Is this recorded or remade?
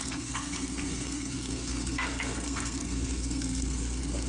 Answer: remade